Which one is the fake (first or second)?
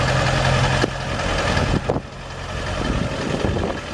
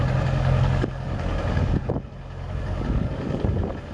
second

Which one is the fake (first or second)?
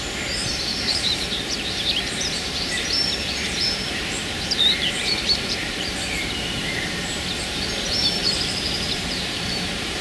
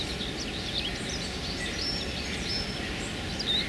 first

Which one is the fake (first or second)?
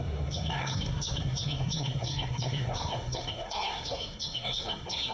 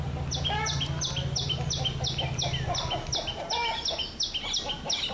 first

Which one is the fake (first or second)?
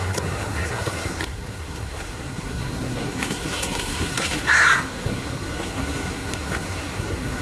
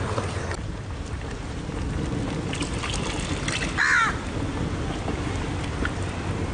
first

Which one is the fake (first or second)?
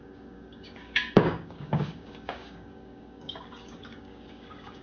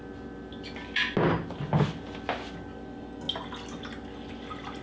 first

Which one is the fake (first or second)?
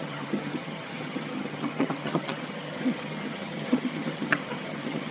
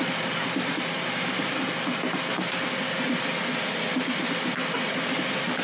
first